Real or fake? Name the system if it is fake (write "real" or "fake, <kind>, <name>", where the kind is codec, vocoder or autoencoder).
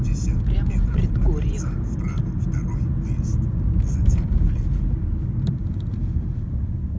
real